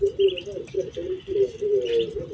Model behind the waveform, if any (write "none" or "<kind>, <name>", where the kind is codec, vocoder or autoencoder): none